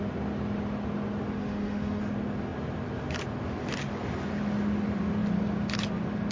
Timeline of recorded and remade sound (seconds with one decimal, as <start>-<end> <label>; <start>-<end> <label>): 0.0-1.4 recorded; 1.4-2.0 remade; 2.0-6.3 recorded